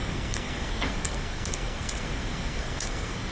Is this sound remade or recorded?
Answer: remade